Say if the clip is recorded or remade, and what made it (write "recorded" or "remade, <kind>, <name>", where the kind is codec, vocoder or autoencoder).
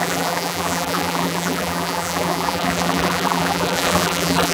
remade, vocoder, BigVGAN v2